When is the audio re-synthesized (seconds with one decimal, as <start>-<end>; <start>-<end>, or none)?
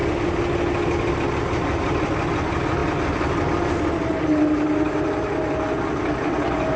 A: none